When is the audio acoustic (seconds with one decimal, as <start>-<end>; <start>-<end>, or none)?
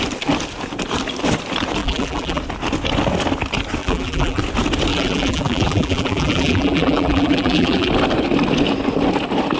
0.0-1.8; 2.4-3.8; 4.4-4.9; 7.9-9.6